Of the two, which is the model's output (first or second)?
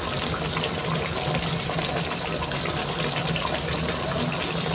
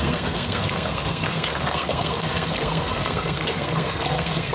second